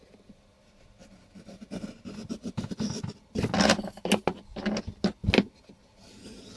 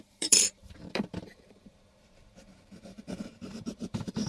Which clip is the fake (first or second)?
second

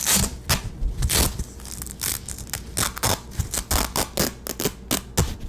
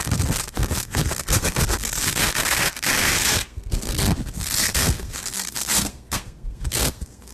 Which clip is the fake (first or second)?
second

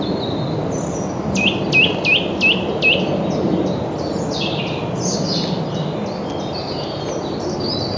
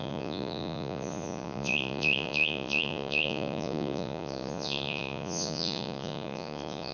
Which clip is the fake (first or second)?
second